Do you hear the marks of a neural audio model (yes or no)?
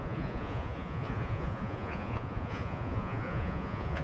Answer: yes